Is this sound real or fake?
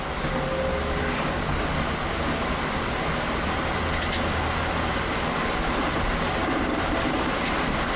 real